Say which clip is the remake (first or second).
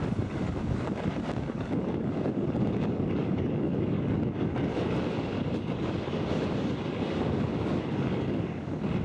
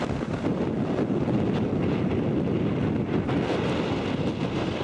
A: first